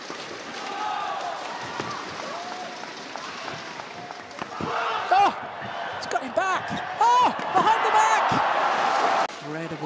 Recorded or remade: recorded